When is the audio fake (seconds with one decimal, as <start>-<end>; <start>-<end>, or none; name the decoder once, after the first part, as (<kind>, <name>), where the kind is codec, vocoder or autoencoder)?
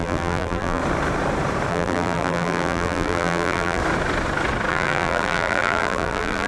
0.0-0.8 (vocoder, BigVGAN v2); 1.7-3.8; 4.7-6.5